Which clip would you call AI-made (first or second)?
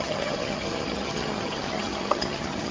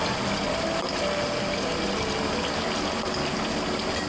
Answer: first